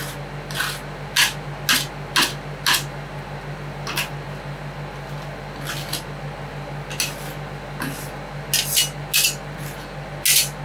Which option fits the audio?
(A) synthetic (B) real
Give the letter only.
B